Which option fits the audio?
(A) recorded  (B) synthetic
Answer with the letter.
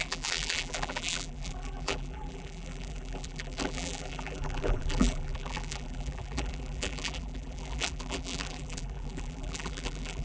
B